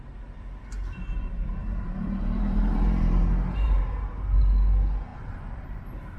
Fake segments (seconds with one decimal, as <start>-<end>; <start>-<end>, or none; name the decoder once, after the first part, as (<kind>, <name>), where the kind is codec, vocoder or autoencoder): 1.6-4.4 (vocoder, BigVGAN v2); 5.1-5.8